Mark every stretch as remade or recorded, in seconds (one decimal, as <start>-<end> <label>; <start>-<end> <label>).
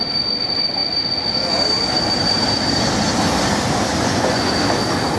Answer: 0.0-3.9 recorded; 3.9-4.5 remade; 4.5-5.2 recorded